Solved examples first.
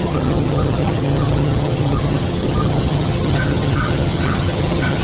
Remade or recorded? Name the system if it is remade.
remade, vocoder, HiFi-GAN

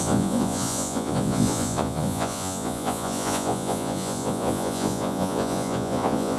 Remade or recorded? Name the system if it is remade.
remade, vocoder, Vocos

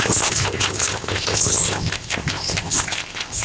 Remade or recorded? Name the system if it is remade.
remade, codec, ZipCodec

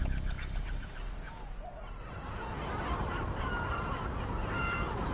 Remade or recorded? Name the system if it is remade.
recorded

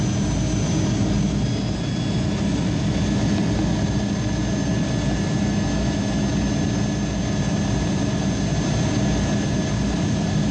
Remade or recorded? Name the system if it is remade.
recorded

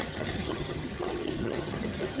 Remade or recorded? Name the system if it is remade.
remade, vocoder, HiFi-GAN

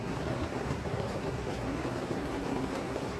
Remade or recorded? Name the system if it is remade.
remade, codec, SNAC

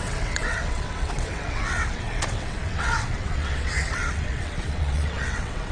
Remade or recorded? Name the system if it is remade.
remade, vocoder, WaveNeXt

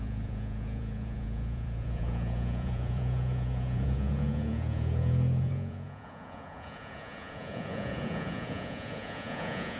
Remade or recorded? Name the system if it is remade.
remade, vocoder, Vocos